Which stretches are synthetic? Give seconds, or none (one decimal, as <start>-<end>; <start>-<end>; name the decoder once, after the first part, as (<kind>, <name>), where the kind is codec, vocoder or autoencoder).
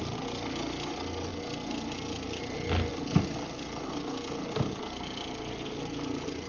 none